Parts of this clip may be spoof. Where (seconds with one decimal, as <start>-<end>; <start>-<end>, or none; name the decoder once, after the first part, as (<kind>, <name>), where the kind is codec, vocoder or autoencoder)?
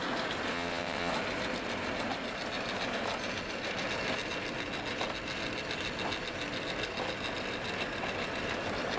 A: 0.5-1.1 (vocoder, WaveNeXt)